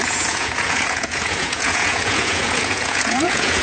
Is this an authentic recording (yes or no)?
no